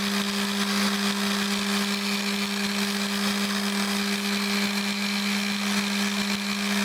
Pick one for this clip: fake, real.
real